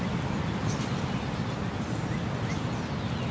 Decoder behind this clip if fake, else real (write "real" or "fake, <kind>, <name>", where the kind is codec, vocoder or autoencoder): real